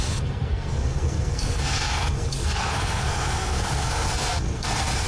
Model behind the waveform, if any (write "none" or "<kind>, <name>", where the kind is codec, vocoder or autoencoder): codec, SNAC